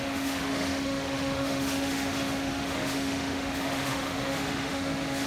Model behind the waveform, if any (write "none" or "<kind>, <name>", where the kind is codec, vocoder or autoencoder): autoencoder, DAC-VAE